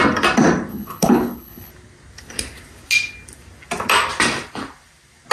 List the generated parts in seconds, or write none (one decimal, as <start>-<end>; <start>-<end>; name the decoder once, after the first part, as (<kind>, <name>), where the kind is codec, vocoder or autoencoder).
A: 0.7-1.7 (codec, HILCodec)